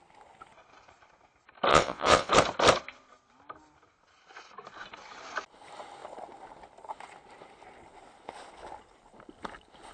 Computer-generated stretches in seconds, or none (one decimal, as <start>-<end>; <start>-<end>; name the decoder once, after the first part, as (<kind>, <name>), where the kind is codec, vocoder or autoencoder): 1.7-2.3 (vocoder, WaveNeXt)